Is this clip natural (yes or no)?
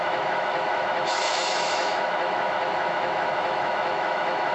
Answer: no